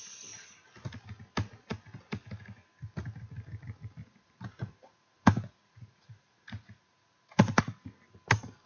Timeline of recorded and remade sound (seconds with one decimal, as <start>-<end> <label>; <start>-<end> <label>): 0.0-4.0 recorded; 4.0-7.6 remade; 7.6-8.7 recorded